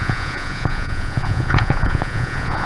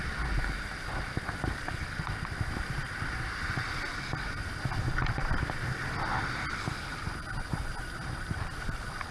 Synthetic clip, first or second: first